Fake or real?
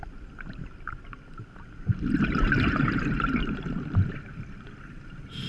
real